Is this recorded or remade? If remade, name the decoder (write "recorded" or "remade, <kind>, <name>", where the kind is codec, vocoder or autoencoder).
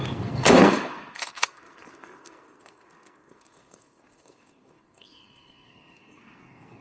remade, codec, SNAC